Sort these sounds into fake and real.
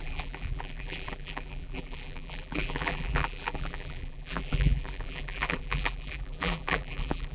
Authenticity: fake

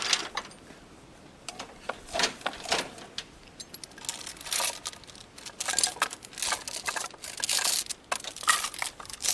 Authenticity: real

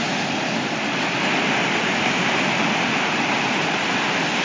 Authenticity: real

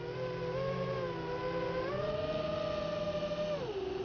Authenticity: real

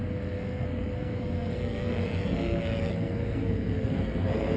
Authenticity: fake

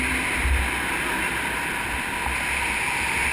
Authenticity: real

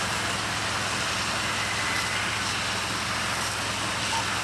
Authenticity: real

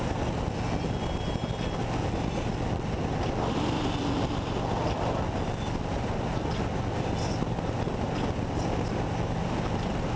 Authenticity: real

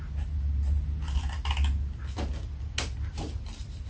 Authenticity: real